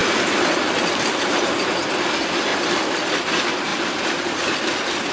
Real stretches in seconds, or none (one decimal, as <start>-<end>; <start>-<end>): 0.0-3.7